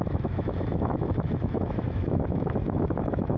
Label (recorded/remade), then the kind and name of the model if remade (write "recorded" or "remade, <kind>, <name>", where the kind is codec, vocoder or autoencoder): remade, autoencoder, DAC-VAE